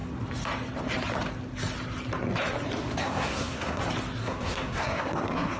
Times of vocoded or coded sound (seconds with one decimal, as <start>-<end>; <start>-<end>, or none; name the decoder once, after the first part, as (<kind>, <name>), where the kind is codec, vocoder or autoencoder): 3.0-3.8 (codec, SNAC); 4.2-5.6